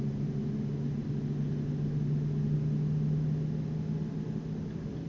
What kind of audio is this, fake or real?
real